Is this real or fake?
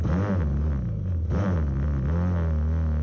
real